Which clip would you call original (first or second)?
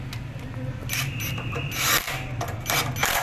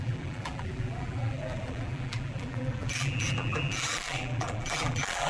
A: first